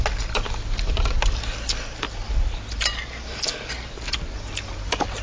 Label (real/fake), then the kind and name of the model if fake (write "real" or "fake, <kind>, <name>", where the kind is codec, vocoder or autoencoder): real